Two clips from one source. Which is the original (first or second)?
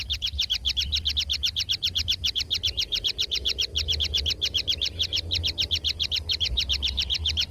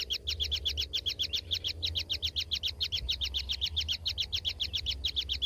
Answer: second